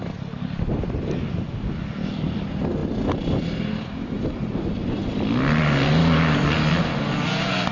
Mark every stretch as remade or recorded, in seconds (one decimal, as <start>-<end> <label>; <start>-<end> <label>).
0.0-6.0 recorded; 6.0-6.5 remade; 6.5-7.7 recorded